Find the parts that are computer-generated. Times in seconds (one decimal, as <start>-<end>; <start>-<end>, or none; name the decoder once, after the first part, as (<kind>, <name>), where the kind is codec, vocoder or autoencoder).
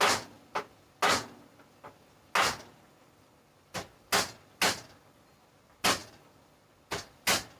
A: none